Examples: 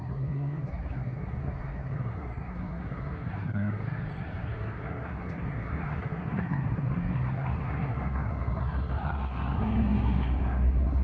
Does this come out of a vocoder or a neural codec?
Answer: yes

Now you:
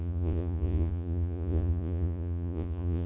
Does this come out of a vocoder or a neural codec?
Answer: yes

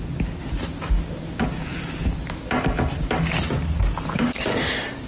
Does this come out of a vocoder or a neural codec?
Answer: no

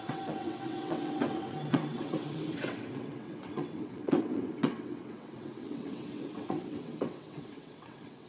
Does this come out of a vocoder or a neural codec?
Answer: yes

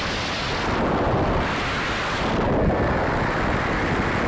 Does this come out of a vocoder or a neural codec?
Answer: no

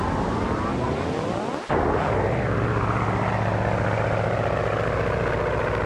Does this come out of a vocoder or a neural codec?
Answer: no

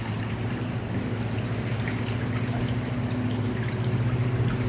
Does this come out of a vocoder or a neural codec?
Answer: no